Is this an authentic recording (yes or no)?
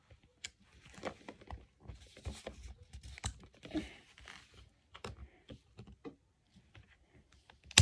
yes